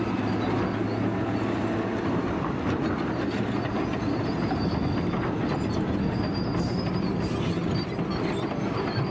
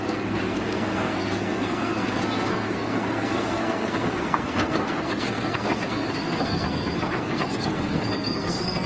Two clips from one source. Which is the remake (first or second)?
second